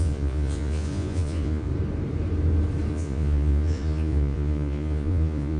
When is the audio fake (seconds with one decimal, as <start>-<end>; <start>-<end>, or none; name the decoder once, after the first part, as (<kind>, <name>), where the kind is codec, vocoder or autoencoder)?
0.0-1.7 (vocoder, Vocos); 2.9-5.6